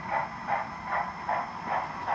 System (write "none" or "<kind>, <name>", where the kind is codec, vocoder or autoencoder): vocoder, BigVGAN v2